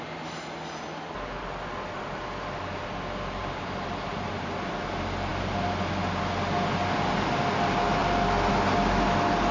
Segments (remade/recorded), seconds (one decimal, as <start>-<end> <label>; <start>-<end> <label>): 0.0-3.4 recorded; 3.4-4.8 remade; 4.8-9.5 recorded